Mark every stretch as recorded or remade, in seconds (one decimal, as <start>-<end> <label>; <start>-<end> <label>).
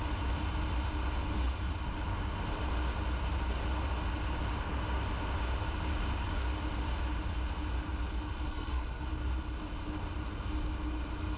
0.0-8.5 recorded; 8.5-9.1 remade; 9.1-11.4 recorded